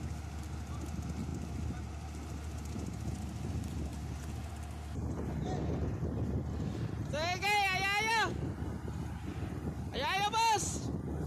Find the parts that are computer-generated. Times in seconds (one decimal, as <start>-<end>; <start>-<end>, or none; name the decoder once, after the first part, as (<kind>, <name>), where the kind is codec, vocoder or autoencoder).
none